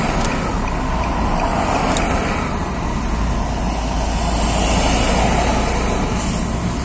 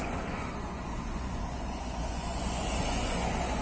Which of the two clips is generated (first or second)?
second